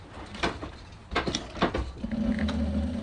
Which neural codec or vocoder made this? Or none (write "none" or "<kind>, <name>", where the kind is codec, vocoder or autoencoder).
none